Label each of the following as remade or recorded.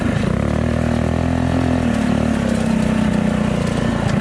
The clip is recorded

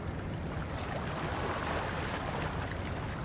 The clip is recorded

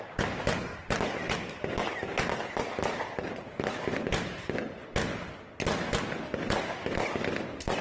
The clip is recorded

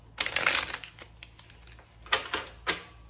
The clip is recorded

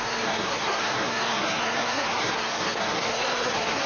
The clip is remade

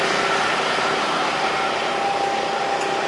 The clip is recorded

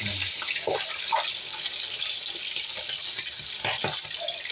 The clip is recorded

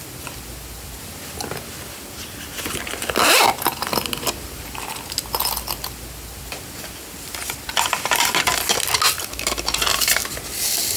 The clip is recorded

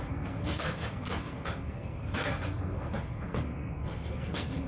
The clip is remade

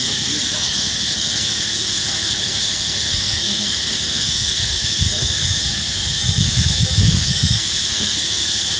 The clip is remade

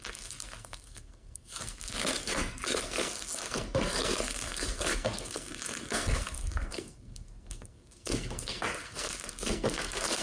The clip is remade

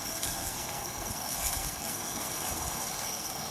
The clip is remade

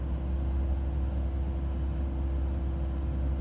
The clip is recorded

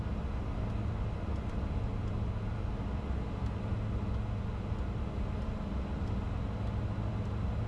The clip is recorded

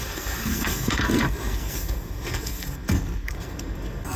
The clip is remade